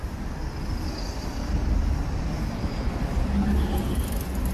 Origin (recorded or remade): recorded